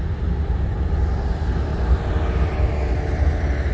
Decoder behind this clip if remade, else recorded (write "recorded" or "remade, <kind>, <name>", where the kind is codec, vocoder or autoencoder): recorded